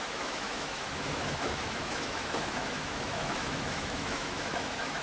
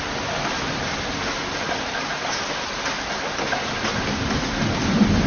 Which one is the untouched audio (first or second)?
second